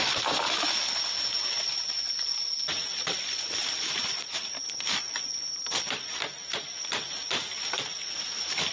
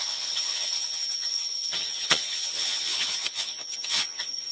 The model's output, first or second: second